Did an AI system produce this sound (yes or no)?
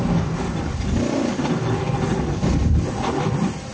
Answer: no